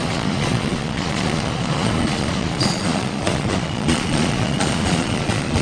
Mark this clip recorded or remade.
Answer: remade